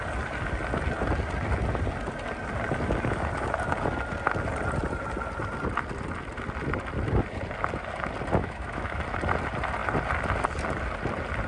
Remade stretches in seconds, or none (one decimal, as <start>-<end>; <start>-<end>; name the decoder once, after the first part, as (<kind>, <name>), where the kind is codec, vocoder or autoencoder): 8.4-9.0 (autoencoder, DAC-VAE)